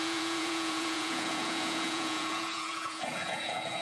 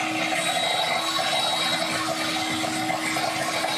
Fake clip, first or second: first